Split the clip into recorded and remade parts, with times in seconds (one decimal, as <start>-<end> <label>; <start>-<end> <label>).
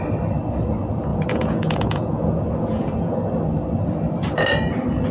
0.0-1.1 recorded; 1.1-3.1 remade; 3.1-5.1 recorded